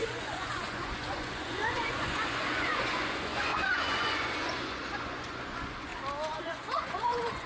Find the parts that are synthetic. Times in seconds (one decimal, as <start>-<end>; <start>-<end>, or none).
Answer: 0.0-5.9; 6.4-7.5